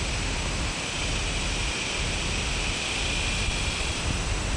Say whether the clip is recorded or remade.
recorded